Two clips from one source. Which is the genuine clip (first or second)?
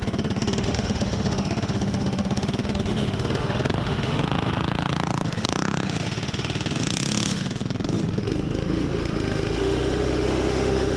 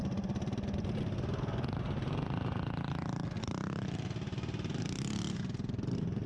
second